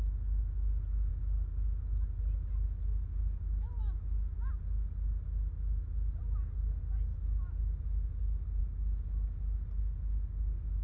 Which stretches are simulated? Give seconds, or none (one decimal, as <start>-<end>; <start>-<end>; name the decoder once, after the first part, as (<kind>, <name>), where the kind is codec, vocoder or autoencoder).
none